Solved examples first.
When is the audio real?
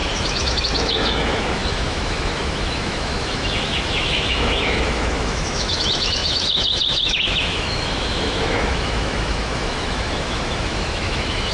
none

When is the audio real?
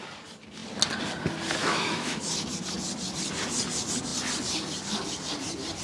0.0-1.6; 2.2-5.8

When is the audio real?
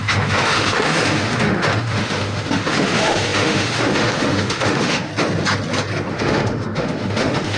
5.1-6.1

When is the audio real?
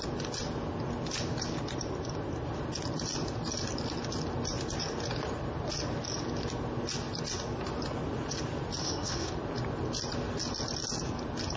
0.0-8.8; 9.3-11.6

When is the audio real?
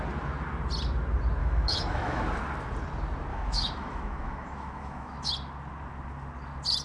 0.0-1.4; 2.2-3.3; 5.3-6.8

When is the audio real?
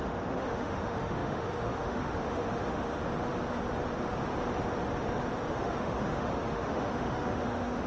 3.0-5.5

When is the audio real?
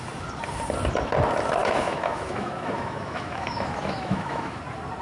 0.0-1.6; 4.6-5.0